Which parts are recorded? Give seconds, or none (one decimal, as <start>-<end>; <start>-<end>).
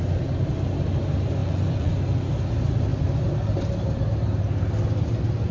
0.0-1.4; 1.9-5.5